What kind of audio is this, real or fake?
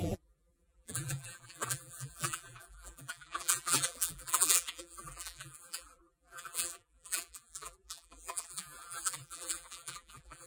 fake